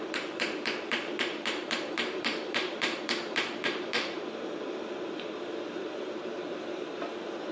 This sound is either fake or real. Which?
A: fake